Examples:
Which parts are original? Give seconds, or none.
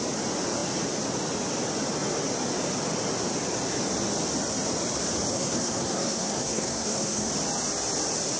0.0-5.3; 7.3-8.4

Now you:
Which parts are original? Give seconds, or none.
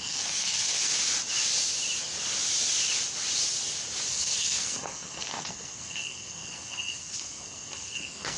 0.9-4.1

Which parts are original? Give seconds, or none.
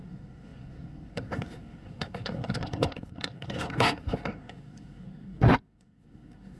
none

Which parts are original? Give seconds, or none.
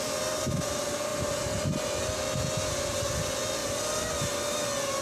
0.0-5.0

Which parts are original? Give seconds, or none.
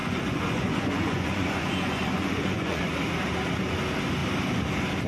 2.8-5.1